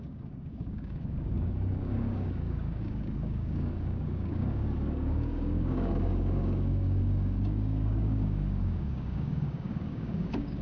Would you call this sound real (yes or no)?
no